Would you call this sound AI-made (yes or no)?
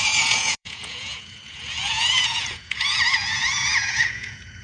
yes